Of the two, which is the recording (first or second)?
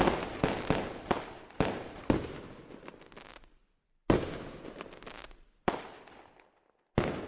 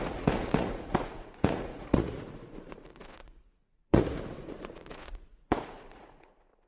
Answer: first